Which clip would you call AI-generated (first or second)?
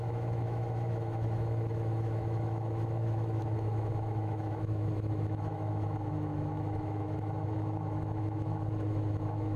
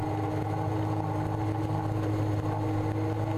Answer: first